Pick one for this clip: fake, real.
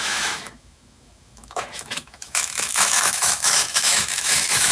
fake